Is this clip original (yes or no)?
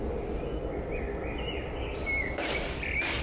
yes